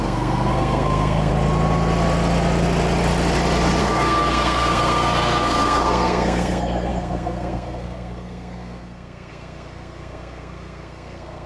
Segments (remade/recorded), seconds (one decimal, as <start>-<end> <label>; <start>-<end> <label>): 0.0-1.3 remade; 1.3-3.8 recorded; 3.8-11.5 remade